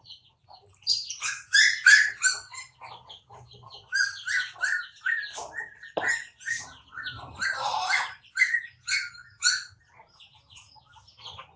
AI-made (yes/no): no